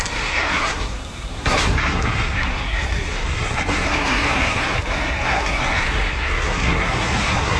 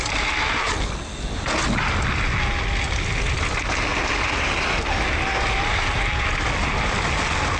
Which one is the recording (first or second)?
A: second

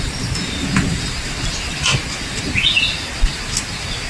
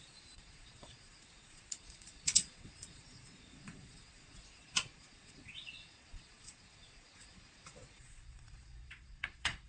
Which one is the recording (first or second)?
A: first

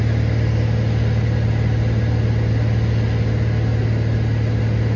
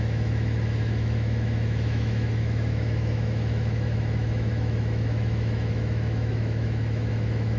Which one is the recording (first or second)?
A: first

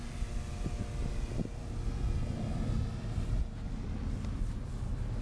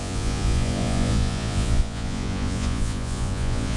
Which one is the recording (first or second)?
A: first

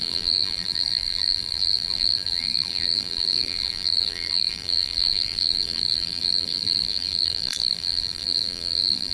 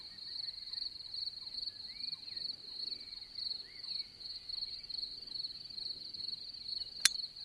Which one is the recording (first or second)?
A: second